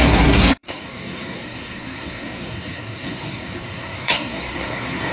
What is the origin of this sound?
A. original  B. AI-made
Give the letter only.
B